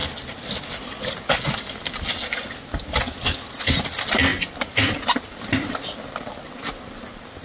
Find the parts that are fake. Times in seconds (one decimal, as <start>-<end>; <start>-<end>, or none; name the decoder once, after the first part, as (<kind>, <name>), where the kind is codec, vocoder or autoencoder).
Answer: none